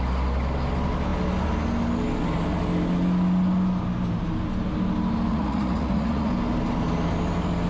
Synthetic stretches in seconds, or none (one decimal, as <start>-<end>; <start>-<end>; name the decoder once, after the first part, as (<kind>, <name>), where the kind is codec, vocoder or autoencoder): 5.3-6.3 (vocoder, Vocos)